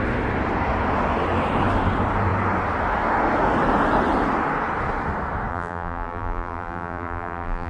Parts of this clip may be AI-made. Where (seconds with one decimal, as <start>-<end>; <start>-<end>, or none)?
5.5-7.7